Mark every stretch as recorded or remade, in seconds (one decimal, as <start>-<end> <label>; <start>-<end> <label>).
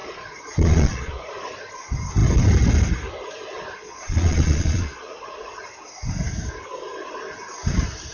0.0-1.3 remade; 1.3-3.8 recorded; 3.8-5.5 remade; 5.5-8.1 recorded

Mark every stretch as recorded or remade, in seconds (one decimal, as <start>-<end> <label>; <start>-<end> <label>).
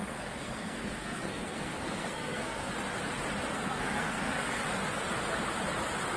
0.0-2.7 remade; 2.7-3.5 recorded; 3.5-4.6 remade; 4.6-6.2 recorded